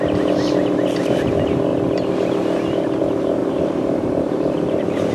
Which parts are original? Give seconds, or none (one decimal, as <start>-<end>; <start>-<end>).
0.0-3.4